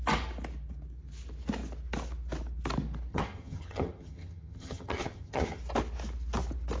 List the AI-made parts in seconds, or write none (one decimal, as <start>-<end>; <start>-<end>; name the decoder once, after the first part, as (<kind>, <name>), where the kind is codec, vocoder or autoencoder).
3.1-5.6 (vocoder, HiFi-GAN)

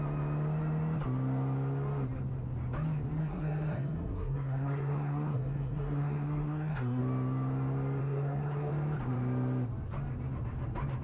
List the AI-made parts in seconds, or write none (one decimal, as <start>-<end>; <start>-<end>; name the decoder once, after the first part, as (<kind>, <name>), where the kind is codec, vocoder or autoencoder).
3.2-7.0 (codec, SNAC); 8.0-8.7